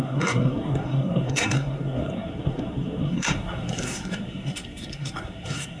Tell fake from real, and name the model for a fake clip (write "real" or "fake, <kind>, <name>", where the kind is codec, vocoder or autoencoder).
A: fake, codec, SNAC